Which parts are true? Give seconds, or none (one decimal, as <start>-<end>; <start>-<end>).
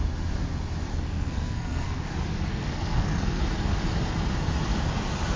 0.0-0.9; 2.0-2.5; 3.4-5.4